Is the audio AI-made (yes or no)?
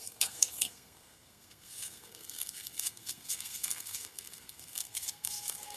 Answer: yes